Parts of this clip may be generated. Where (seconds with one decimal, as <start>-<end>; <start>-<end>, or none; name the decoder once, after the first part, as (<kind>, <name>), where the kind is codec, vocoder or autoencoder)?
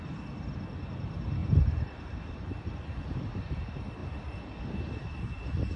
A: 1.4-3.5 (vocoder, BigVGAN v2)